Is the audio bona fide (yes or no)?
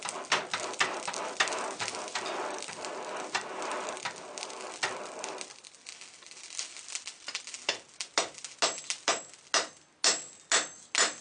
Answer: yes